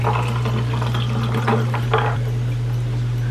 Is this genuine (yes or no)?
yes